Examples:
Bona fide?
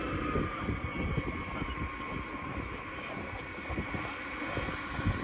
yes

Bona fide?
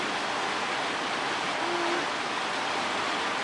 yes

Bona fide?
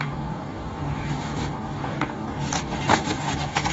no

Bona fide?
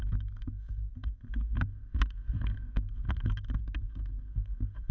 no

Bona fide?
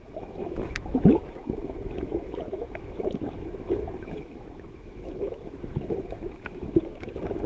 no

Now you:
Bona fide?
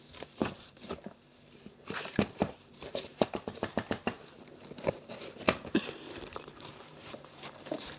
no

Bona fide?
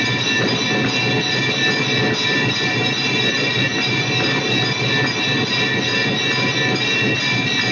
yes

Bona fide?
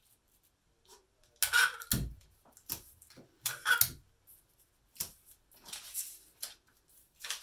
yes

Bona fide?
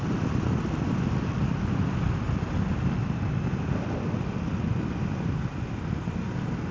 yes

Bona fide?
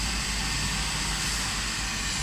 yes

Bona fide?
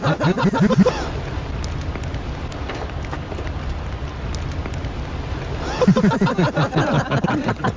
yes